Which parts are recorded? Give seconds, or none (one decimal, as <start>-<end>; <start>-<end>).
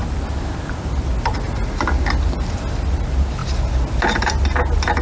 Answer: 0.0-5.0